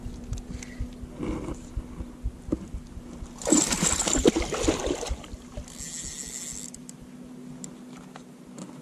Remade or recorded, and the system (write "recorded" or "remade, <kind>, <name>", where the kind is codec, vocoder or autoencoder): recorded